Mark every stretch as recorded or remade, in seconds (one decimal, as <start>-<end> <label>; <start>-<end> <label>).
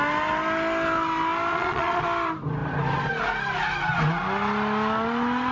0.0-1.5 recorded; 1.5-2.0 remade; 2.0-5.5 recorded